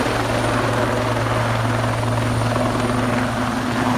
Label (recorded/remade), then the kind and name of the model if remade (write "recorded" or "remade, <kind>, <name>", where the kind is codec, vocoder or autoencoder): recorded